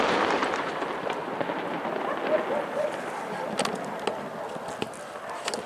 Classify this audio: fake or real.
real